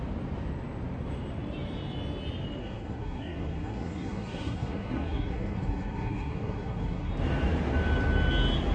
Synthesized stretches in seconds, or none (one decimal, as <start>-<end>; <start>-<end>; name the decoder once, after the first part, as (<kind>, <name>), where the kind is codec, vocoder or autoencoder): 2.6-7.1 (codec, SNAC)